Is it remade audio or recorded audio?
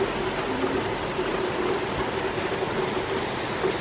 recorded